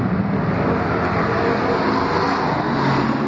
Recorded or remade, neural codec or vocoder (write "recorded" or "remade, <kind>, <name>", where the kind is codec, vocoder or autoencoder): recorded